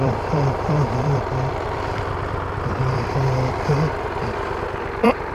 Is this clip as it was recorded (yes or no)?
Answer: no